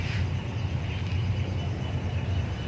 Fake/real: real